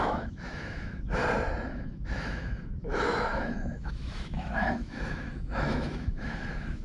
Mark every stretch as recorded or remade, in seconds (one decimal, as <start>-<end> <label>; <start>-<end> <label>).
0.0-1.2 remade; 1.2-1.7 recorded; 1.7-6.8 remade

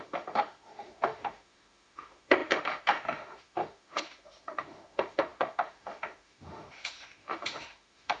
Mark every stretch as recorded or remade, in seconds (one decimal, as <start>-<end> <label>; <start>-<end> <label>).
0.0-8.2 remade

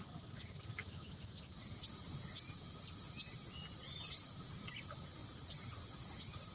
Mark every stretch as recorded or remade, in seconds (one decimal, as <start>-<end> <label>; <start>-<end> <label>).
0.0-0.8 recorded; 0.8-1.4 remade; 1.4-6.5 recorded

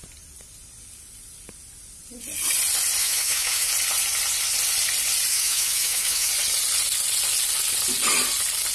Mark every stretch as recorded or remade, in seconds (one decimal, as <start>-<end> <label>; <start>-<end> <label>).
0.0-3.0 recorded; 3.0-3.7 remade; 3.7-5.3 recorded; 5.3-6.3 remade; 6.3-8.7 recorded

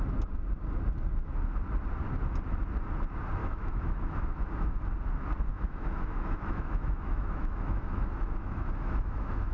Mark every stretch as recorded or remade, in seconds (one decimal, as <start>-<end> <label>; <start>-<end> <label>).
0.0-3.4 recorded; 3.4-4.8 remade; 4.8-5.5 recorded; 5.5-9.5 remade

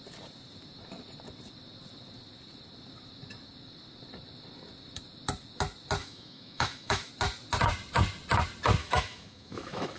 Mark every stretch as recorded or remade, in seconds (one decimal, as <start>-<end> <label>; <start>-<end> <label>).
0.0-6.0 recorded; 6.0-7.1 remade; 7.1-8.8 recorded; 8.8-10.0 remade